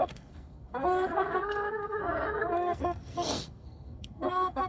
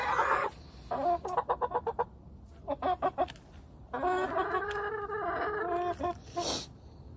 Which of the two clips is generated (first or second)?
first